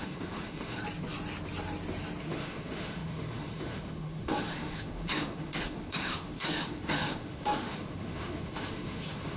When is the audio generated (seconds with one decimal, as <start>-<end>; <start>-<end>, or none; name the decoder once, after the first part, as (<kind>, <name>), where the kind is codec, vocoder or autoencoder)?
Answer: 0.0-0.8 (autoencoder, DAC-VAE); 2.2-9.4